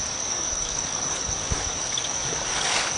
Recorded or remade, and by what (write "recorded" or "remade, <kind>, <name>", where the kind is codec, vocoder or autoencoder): remade, codec, DAC